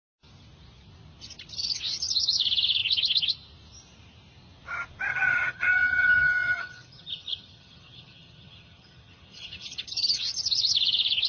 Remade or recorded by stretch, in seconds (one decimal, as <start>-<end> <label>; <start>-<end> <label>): 0.0-5.1 recorded; 5.1-10.2 remade; 10.2-11.3 recorded